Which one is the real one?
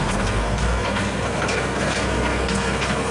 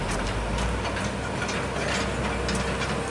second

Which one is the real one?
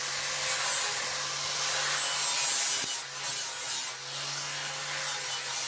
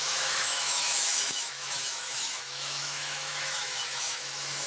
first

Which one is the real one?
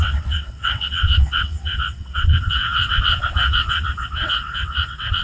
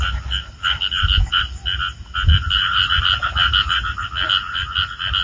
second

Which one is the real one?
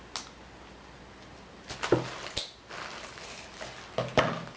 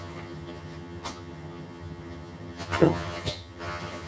first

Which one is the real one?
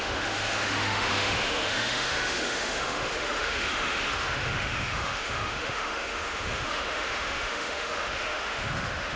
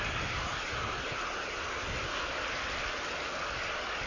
second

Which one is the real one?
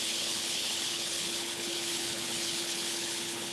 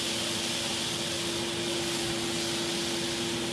second